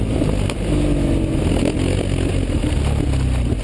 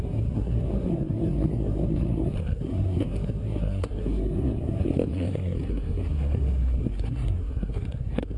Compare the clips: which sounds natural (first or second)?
first